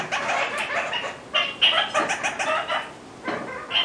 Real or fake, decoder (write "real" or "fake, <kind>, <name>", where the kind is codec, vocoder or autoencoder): real